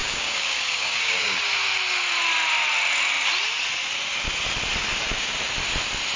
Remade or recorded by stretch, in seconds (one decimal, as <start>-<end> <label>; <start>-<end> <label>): 0.0-1.4 remade; 1.4-6.2 recorded